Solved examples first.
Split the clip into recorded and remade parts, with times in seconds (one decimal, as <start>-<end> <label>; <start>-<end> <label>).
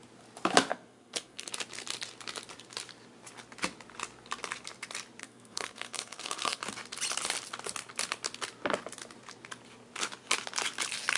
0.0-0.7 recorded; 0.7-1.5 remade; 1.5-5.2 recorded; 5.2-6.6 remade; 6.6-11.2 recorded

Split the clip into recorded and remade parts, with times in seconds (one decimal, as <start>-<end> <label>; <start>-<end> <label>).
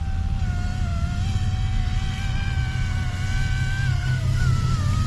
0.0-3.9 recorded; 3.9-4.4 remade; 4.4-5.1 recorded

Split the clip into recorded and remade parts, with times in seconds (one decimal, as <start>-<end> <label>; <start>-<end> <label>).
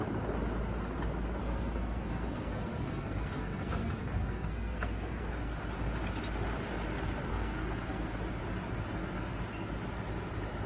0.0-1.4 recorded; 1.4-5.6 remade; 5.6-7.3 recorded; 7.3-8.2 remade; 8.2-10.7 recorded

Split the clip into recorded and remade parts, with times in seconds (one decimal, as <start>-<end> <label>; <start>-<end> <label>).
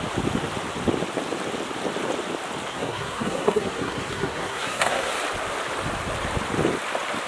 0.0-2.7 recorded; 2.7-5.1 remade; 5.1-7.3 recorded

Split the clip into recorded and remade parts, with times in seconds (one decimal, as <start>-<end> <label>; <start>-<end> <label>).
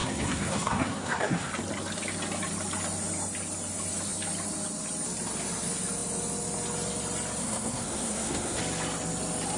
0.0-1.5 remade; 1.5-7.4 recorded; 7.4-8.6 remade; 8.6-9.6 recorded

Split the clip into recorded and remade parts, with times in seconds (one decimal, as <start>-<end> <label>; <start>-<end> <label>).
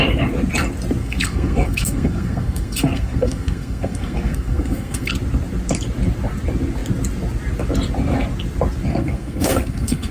0.0-1.0 recorded; 1.0-5.1 remade; 5.1-8.9 recorded; 8.9-10.1 remade